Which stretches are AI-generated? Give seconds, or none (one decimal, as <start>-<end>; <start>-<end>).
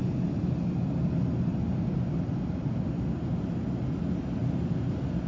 none